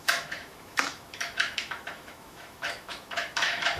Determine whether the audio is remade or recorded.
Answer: remade